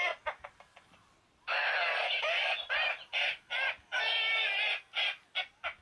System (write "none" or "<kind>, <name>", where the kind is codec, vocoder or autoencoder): none